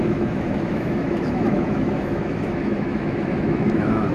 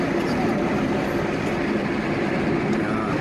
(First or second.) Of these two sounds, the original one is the second